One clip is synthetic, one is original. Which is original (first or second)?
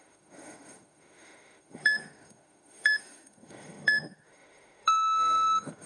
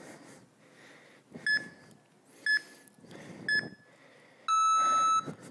second